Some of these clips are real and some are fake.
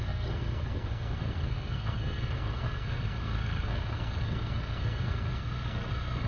fake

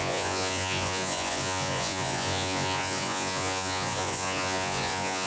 fake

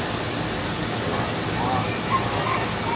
real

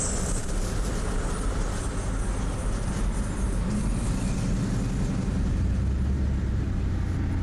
real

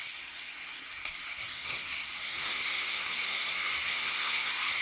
fake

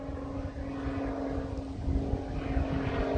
real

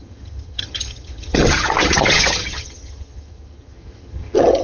fake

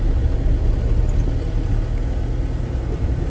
real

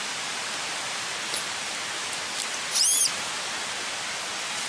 real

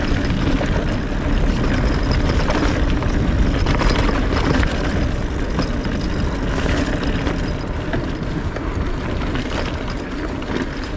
real